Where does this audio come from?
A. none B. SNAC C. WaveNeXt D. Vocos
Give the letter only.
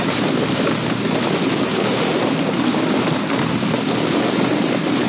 A